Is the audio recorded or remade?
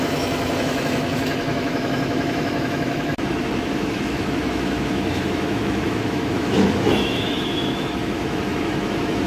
remade